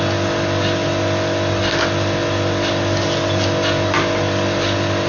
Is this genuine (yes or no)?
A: yes